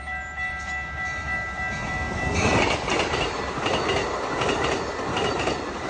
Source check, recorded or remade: recorded